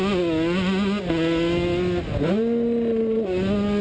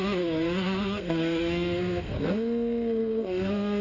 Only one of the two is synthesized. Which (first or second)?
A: second